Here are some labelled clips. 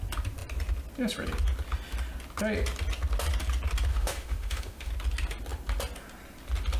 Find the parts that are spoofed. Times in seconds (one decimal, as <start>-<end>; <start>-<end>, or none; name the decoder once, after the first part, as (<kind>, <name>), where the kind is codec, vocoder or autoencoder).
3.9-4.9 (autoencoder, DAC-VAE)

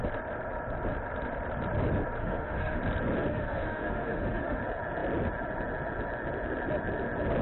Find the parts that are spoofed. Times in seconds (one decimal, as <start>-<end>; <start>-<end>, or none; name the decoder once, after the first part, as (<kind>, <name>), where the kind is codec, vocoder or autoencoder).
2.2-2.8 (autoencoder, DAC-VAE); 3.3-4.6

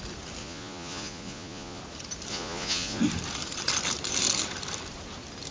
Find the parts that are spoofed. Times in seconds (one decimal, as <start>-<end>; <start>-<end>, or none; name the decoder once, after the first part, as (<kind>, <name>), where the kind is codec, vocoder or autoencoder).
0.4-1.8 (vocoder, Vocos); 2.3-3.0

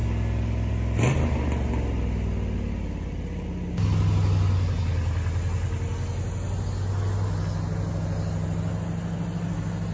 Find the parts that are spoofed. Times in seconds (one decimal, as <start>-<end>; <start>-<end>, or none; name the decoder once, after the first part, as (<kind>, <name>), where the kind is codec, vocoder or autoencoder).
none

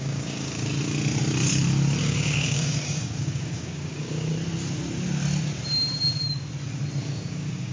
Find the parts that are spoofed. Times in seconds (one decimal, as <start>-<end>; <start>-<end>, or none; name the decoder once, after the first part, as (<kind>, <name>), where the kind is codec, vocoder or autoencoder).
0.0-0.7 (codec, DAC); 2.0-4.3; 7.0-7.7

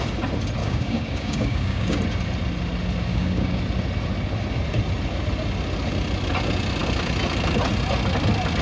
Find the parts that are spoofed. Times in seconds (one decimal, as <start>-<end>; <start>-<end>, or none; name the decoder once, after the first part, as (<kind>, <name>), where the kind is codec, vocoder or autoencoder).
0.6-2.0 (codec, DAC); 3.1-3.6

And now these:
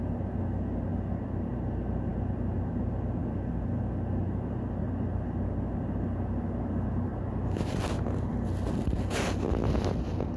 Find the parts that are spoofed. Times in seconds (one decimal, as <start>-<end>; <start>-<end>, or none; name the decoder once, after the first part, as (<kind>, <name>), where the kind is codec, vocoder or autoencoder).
none